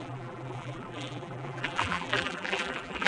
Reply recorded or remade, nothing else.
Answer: remade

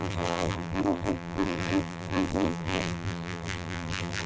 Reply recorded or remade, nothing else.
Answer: remade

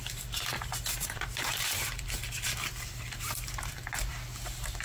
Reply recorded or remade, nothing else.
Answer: remade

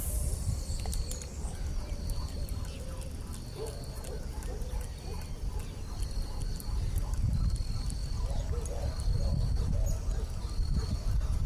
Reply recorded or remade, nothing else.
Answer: recorded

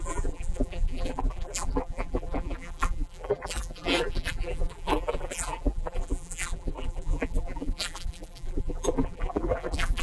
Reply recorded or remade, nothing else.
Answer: remade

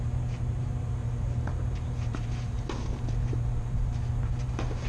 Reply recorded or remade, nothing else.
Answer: remade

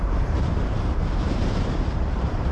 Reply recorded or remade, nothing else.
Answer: remade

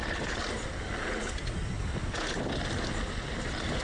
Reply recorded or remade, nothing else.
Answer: recorded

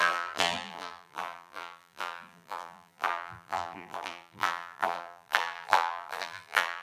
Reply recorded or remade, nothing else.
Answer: remade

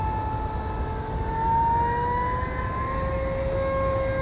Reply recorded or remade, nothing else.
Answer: recorded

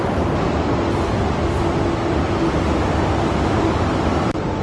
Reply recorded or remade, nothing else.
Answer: recorded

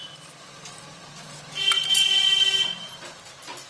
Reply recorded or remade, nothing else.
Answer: recorded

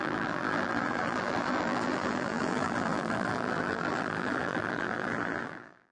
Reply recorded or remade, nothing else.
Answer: remade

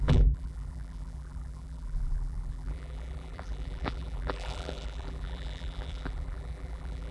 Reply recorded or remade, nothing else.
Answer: remade